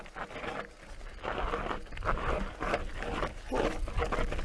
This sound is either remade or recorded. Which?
recorded